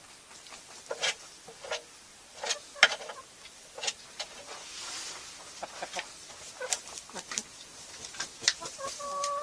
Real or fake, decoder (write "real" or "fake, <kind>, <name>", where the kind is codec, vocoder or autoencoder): fake, vocoder, BigVGAN v2